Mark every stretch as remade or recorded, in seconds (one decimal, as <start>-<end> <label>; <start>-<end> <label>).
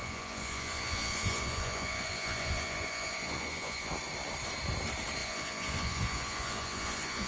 0.0-3.9 remade; 3.9-5.2 recorded; 5.2-7.3 remade